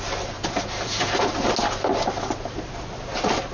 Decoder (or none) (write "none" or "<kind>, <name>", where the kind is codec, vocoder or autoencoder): none